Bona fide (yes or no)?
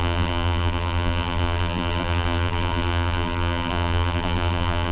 no